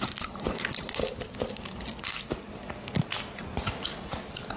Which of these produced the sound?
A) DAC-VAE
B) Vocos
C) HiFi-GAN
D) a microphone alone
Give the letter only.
D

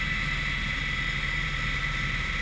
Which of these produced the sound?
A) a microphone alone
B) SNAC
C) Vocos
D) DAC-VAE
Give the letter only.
A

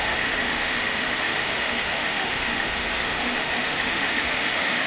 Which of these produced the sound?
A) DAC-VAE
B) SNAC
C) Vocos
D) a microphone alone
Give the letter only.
A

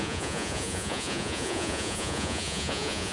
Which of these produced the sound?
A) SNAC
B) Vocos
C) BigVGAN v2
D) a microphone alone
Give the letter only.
B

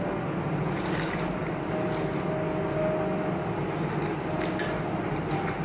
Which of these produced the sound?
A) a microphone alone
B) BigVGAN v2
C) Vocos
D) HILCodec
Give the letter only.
A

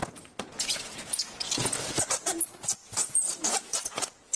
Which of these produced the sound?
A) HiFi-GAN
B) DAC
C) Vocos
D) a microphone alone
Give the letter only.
C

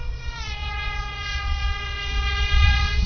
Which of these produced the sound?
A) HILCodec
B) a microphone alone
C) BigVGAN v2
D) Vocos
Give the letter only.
D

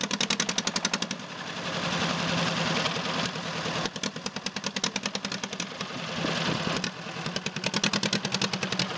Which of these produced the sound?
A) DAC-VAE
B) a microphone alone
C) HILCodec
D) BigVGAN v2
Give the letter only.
B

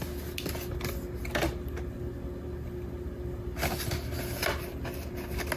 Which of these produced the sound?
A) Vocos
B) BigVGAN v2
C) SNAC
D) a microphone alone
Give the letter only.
D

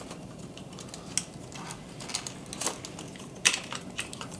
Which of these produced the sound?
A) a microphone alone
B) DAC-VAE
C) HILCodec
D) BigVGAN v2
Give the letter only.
A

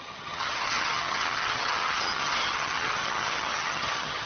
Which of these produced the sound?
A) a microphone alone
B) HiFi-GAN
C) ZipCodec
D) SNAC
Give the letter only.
B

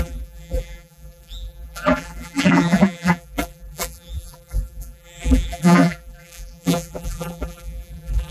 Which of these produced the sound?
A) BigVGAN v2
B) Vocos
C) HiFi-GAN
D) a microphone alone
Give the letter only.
A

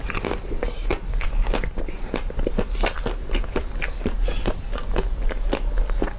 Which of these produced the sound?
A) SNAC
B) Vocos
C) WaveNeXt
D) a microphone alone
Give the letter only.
D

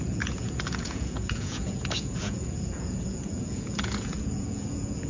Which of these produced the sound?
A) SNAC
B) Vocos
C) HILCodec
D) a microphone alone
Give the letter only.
B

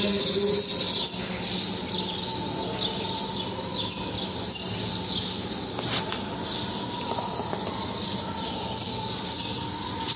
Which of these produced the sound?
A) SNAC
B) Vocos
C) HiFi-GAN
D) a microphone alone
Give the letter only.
D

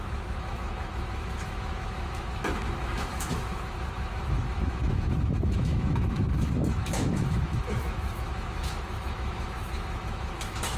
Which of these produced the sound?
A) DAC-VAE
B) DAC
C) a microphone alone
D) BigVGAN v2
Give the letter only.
A